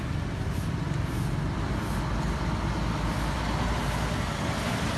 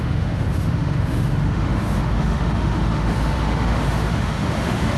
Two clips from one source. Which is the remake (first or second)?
second